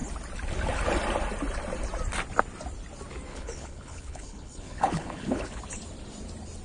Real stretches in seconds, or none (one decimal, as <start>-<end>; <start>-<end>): 0.0-3.3; 5.6-6.6